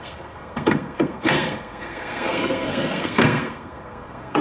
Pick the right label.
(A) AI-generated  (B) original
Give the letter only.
A